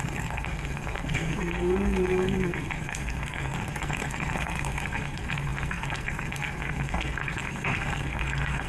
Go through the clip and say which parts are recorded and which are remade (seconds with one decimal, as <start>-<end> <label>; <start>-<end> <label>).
0.0-8.7 remade